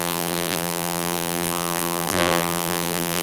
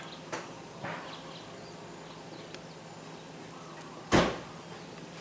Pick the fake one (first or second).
first